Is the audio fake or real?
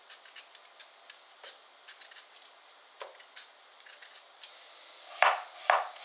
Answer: real